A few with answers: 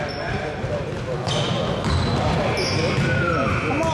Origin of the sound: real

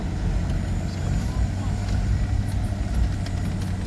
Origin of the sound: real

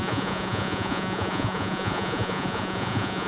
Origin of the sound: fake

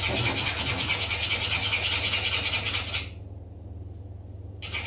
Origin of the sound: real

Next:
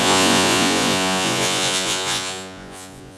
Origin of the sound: fake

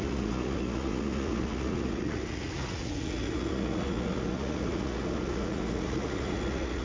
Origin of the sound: fake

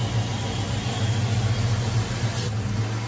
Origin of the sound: real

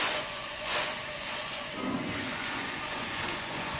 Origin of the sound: fake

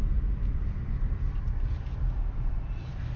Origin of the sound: real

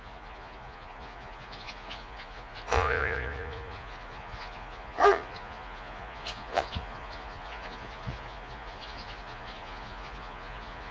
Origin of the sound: fake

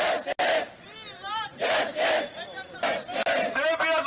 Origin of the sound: real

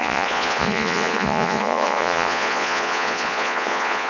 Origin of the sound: fake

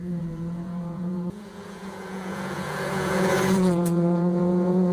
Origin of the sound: fake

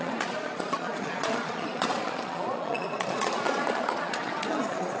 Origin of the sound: fake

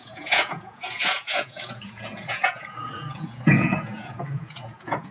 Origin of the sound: fake